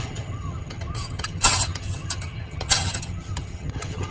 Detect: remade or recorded remade